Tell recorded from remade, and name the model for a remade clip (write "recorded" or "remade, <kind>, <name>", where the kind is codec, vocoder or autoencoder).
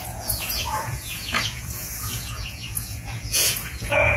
remade, vocoder, Vocos